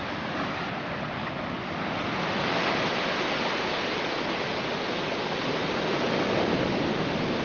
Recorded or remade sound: recorded